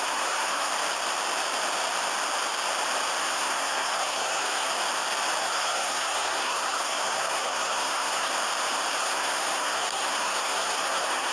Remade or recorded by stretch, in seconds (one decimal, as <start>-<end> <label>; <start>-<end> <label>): 0.0-0.7 remade; 0.7-3.2 recorded; 3.2-4.7 remade; 4.7-5.4 recorded; 5.4-8.3 remade; 8.3-9.0 recorded; 9.0-11.3 remade